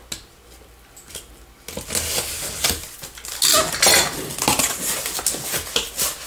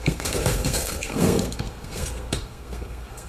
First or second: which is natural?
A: first